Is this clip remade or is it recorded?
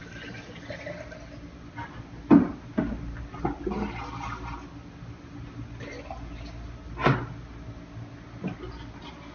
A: recorded